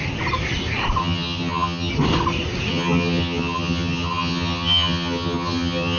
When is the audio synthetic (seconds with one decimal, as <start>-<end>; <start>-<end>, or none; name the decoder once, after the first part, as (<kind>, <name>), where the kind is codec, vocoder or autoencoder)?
1.0-1.9 (vocoder, HiFi-GAN); 2.7-6.0